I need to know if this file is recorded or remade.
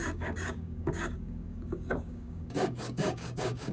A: remade